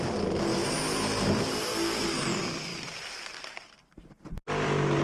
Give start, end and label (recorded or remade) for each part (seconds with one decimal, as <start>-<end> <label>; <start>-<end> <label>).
0.0-2.7 recorded; 2.7-4.3 remade; 4.3-5.0 recorded